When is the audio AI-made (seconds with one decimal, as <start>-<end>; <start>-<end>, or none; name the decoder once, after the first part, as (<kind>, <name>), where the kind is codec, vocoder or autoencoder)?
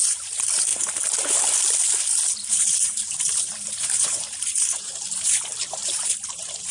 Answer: 0.0-0.7 (vocoder, BigVGAN v2); 2.5-6.7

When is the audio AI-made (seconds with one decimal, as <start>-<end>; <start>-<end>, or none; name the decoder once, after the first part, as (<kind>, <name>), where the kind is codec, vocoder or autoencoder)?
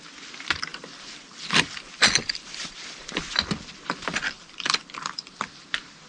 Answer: 0.7-3.2 (vocoder, BigVGAN v2); 4.0-5.6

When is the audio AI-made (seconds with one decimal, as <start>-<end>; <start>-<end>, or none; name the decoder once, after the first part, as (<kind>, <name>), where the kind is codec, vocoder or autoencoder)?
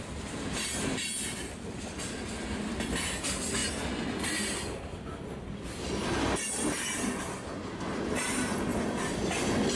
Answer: 8.7-9.2 (vocoder, BigVGAN v2)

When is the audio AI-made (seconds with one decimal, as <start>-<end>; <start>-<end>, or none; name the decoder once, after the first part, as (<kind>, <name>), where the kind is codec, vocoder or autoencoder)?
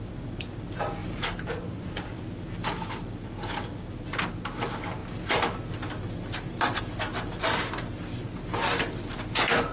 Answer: 1.0-2.2 (vocoder, BigVGAN v2)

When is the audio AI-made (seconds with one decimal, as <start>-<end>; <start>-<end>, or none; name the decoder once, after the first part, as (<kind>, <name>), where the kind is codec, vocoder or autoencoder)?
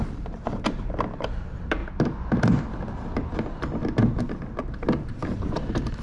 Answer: 0.0-1.8 (vocoder, BigVGAN v2); 4.6-6.0